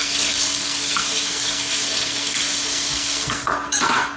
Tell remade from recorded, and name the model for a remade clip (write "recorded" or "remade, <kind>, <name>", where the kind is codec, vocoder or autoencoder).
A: remade, codec, SNAC